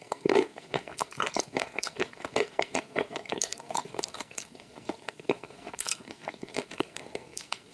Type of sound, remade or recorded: remade